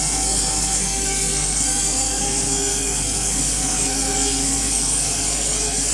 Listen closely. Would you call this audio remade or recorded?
remade